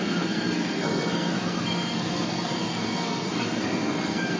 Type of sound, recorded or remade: remade